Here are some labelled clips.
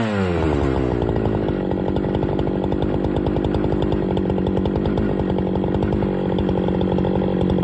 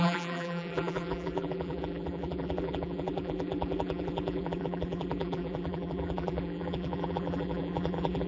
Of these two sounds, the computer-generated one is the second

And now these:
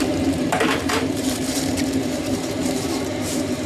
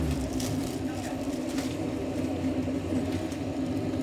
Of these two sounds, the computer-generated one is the first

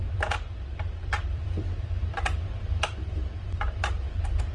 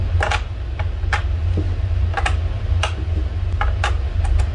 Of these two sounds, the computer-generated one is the first